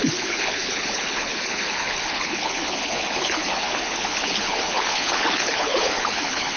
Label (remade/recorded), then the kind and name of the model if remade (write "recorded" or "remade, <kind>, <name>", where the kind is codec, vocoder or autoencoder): remade, codec, HILCodec